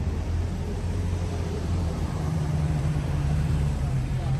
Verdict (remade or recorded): remade